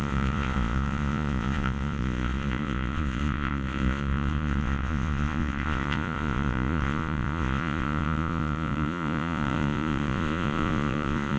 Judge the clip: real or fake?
fake